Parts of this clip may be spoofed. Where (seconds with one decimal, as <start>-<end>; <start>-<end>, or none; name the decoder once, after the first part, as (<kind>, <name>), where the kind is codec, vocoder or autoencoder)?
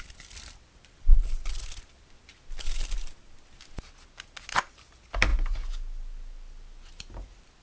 none